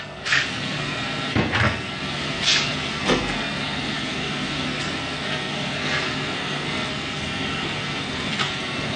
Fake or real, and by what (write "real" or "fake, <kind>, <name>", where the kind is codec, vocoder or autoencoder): fake, codec, SNAC